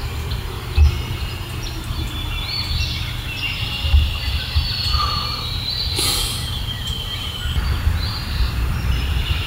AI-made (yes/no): no